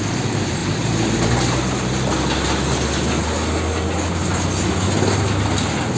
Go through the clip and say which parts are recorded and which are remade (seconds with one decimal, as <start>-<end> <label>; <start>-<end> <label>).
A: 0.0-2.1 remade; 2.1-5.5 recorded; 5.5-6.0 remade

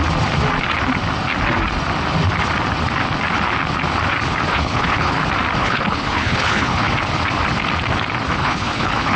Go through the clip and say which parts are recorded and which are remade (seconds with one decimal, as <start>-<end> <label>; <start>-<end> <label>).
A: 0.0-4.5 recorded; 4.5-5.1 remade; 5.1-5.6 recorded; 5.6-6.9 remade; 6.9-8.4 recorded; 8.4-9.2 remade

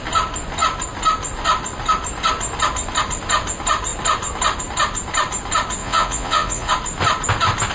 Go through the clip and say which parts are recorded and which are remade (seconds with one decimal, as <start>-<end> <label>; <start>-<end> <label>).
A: 0.0-5.8 recorded; 5.8-6.7 remade; 6.7-7.7 recorded

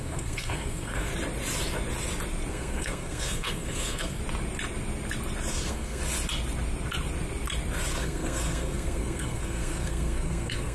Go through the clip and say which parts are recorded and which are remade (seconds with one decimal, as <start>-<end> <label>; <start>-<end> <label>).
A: 0.0-1.1 remade; 1.1-2.5 recorded; 2.5-4.2 remade; 4.2-5.5 recorded; 5.5-6.0 remade; 6.0-8.0 recorded; 8.0-10.7 remade